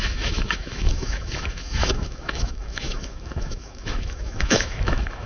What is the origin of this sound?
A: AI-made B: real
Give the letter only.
A